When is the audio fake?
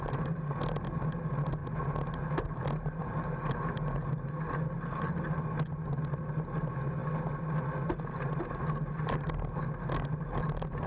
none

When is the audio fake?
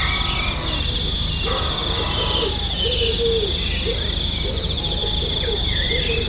1.8-2.5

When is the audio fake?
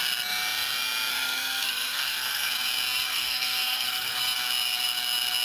1.1-2.5; 3.1-4.2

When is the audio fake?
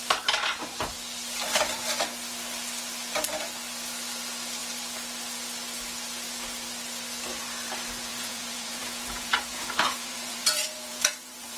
8.1-11.6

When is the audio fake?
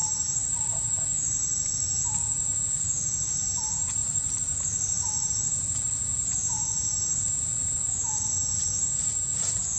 1.7-4.0; 5.3-9.8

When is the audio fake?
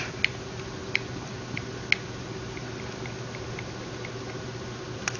none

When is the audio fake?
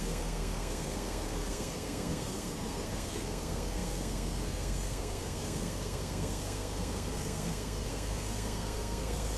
0.0-9.4